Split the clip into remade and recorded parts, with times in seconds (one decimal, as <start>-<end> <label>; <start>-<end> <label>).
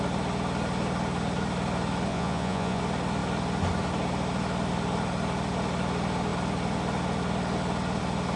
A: 0.0-2.1 recorded; 2.1-2.8 remade; 2.8-8.4 recorded